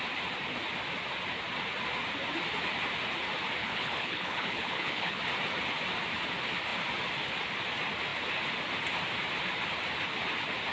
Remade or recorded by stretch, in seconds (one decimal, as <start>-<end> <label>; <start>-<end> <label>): 0.0-3.6 recorded; 3.6-5.2 remade; 5.2-10.7 recorded